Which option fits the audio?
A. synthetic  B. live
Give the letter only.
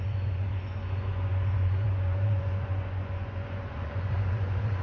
A